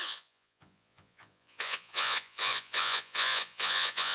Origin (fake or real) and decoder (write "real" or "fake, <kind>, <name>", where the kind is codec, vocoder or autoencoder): fake, vocoder, Vocos